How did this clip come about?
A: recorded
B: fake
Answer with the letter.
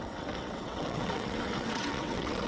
B